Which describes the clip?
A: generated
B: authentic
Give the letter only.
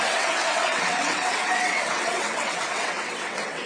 A